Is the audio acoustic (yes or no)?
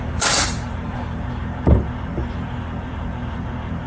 no